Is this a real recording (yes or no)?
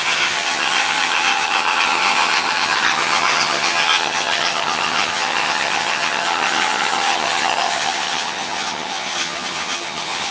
no